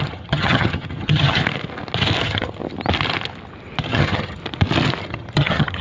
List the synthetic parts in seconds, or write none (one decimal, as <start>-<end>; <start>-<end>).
0.0-1.4; 2.2-2.6; 3.8-4.4; 5.0-5.8

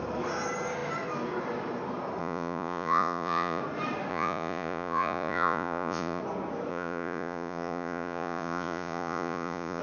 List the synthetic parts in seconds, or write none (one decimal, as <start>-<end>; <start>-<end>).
2.2-3.6; 4.1-6.2; 6.7-9.8